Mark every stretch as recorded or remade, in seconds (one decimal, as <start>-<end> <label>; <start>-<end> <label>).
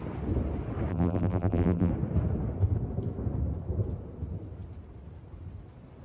0.0-0.9 recorded; 0.9-1.9 remade; 1.9-6.0 recorded